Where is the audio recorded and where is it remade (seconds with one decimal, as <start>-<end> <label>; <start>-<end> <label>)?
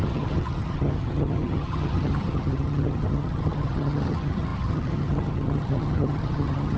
0.0-6.8 remade